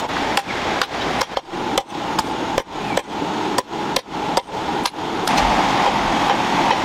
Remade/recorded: recorded